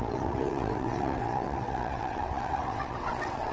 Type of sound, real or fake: fake